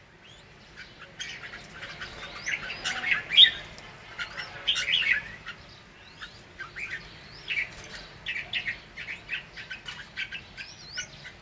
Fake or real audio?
real